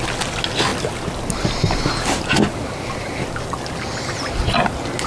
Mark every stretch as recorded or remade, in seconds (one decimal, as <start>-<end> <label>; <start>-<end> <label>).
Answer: 0.0-5.1 recorded

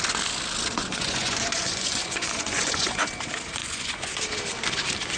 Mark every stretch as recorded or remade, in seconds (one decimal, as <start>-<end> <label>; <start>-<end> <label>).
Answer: 0.0-0.8 recorded; 0.8-3.0 remade; 3.0-3.6 recorded; 3.6-4.2 remade; 4.2-5.2 recorded